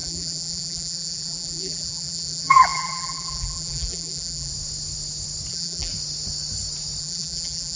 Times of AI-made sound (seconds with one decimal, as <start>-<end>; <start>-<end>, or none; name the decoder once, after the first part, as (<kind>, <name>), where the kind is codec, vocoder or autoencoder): 0.0-4.5 (vocoder, BigVGAN v2); 5.5-5.9; 7.0-7.8